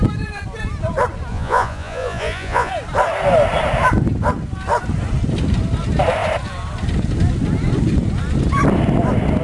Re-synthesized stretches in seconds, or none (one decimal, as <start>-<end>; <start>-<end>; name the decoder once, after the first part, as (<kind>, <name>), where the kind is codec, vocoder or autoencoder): 1.3-2.7 (vocoder, Vocos)